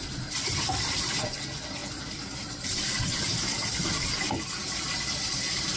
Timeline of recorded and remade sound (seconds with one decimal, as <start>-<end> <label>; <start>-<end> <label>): 0.0-5.8 remade